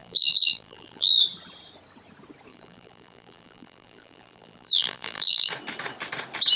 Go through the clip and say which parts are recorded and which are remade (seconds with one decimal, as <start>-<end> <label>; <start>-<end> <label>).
0.0-1.2 remade; 1.2-2.5 recorded; 2.5-5.5 remade; 5.5-6.6 recorded

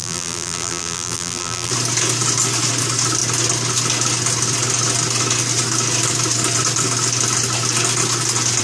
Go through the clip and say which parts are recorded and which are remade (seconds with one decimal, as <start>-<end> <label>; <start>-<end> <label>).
0.0-1.7 remade; 1.7-8.6 recorded

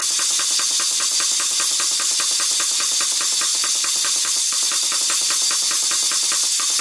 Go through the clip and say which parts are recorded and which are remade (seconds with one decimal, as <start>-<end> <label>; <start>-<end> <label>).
0.0-3.5 recorded; 3.5-5.0 remade; 5.0-6.8 recorded